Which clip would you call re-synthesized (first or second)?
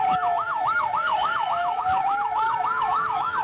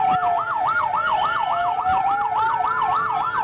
first